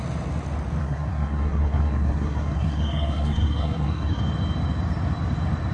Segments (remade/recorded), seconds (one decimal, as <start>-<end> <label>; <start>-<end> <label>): 0.0-0.8 recorded; 0.8-4.2 remade; 4.2-5.7 recorded